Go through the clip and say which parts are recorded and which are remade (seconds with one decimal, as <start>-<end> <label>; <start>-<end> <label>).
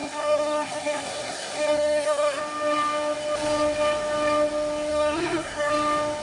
0.0-2.4 remade; 2.4-4.9 recorded; 4.9-5.7 remade; 5.7-6.2 recorded